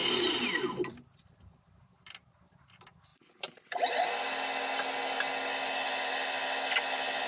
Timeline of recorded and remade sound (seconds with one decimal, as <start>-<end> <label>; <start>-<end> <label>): 0.0-2.6 remade; 2.6-3.1 recorded; 3.1-3.9 remade; 3.9-7.3 recorded